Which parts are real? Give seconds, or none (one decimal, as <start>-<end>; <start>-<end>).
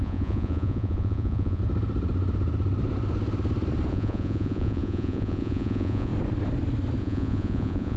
1.6-3.9; 6.1-7.0